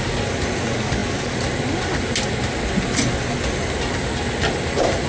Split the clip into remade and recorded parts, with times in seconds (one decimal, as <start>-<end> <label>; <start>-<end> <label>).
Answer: 0.0-5.1 recorded